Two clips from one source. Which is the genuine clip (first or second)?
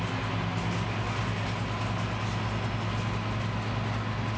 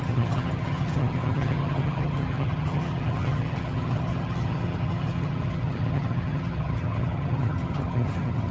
first